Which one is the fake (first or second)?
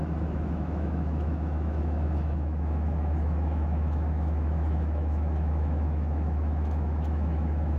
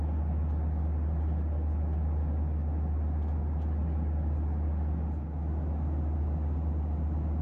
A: first